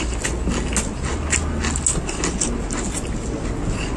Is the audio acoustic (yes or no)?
yes